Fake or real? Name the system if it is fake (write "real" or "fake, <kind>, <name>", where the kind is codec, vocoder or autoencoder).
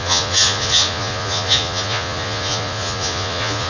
fake, vocoder, Vocos